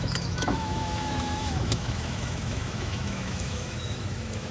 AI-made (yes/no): yes